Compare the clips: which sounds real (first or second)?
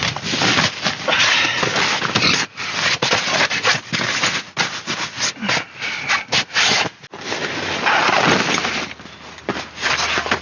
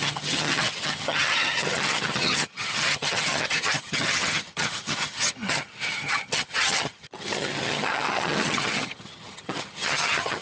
first